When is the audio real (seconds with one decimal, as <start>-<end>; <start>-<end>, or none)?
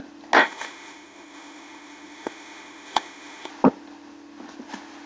0.0-0.4; 3.5-5.1